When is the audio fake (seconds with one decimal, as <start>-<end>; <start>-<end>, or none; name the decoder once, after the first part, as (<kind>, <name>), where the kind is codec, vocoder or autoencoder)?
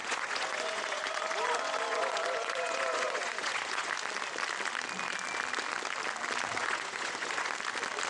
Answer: 0.0-3.9 (vocoder, Vocos); 6.6-7.5